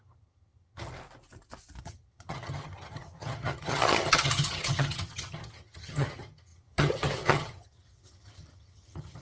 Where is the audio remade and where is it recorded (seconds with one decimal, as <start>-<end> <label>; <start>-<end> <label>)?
0.0-0.9 remade; 0.9-1.8 recorded; 1.8-9.2 remade